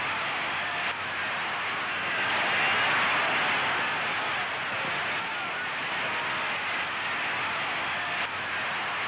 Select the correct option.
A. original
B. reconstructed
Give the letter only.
A